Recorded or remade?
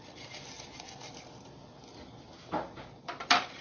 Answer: recorded